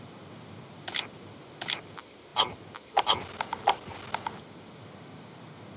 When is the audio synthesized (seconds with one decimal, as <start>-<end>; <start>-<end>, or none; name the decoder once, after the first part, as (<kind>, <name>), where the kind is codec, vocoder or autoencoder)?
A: none